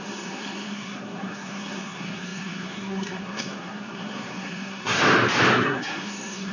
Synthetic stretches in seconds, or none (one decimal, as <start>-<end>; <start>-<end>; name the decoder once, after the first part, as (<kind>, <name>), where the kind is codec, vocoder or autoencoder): 0.0-5.0 (codec, SNAC); 5.5-6.5